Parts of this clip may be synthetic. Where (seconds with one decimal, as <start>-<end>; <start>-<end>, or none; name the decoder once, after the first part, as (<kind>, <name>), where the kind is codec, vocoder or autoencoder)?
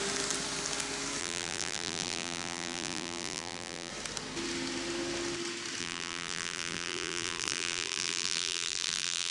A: 1.2-3.9 (vocoder, BigVGAN v2); 5.8-9.3